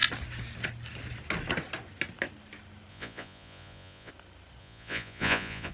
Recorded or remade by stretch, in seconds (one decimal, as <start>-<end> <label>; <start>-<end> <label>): 0.0-2.9 recorded; 2.9-4.1 remade; 4.1-4.6 recorded; 4.6-5.7 remade